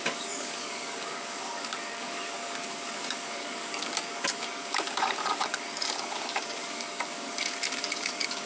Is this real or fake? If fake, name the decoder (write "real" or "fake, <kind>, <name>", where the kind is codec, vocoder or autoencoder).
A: fake, codec, DAC